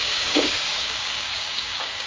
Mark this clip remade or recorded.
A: remade